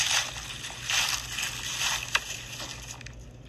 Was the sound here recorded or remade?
recorded